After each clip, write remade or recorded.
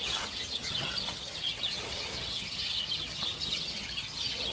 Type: remade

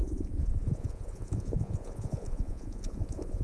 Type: remade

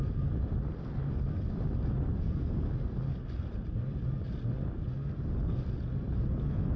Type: recorded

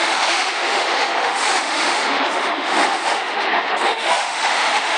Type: remade